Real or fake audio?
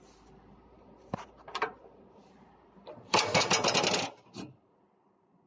fake